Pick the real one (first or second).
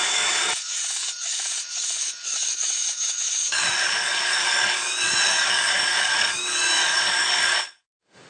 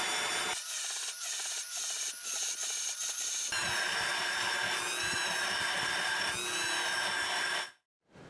second